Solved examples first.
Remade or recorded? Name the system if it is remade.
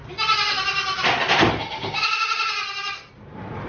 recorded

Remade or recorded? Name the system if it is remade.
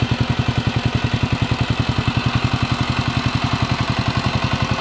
recorded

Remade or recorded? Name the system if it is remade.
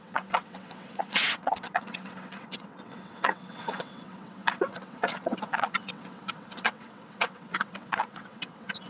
remade, vocoder, WaveNeXt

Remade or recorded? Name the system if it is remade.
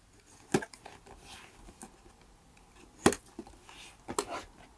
recorded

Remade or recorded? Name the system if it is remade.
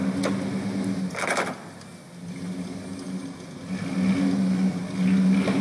recorded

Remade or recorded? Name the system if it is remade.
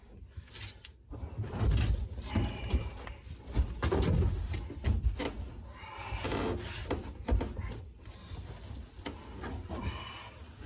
recorded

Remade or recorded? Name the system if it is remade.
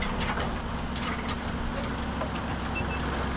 recorded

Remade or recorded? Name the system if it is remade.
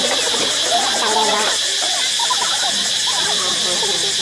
recorded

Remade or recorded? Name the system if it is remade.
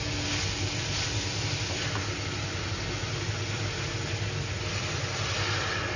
recorded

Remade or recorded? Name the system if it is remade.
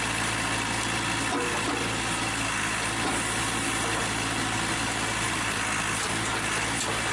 recorded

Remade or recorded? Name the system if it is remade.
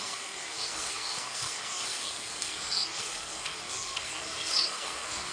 remade, codec, SNAC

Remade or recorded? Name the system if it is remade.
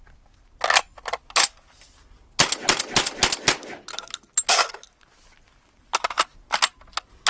recorded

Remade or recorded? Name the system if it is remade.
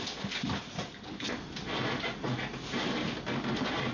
recorded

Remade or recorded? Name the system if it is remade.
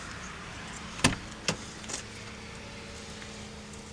recorded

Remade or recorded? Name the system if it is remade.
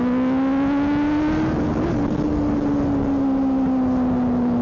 recorded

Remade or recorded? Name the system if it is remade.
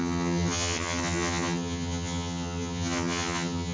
remade, vocoder, HiFi-GAN